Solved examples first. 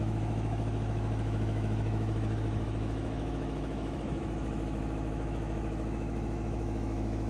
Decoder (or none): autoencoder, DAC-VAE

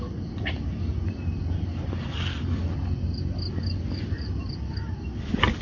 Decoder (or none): none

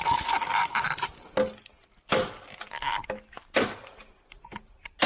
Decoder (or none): none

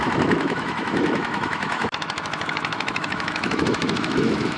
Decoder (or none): autoencoder, DAC-VAE